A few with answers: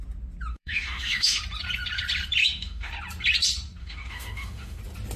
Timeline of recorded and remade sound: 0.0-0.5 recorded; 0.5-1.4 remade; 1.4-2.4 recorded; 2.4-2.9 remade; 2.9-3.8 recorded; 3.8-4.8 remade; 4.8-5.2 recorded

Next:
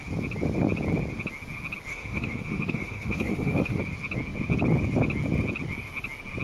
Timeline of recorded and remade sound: 0.0-1.9 recorded; 1.9-3.8 remade; 3.8-6.4 recorded

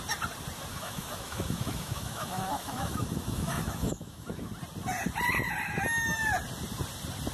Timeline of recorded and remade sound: 0.0-0.7 recorded; 0.7-4.5 remade; 4.5-7.3 recorded

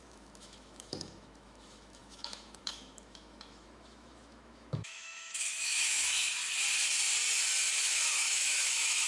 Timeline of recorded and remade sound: 0.0-6.4 remade; 6.4-7.8 recorded; 7.8-9.1 remade

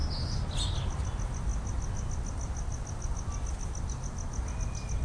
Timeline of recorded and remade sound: 0.0-5.0 recorded

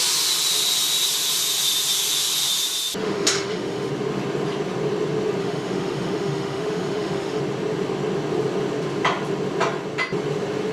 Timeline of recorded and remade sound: 0.0-3.0 recorded; 3.0-3.9 remade; 3.9-5.4 recorded; 5.4-7.4 remade; 7.4-10.7 recorded